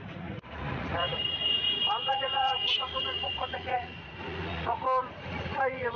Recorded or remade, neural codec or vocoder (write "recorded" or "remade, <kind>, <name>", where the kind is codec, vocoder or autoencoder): remade, vocoder, Vocos